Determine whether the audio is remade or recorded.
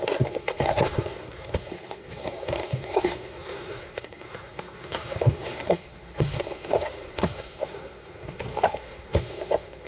remade